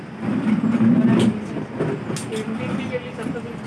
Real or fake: real